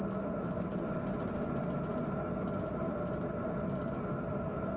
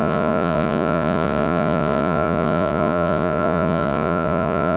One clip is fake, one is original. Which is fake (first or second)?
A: second